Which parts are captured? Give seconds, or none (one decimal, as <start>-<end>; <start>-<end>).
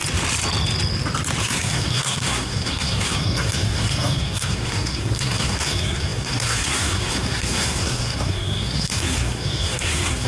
0.0-1.4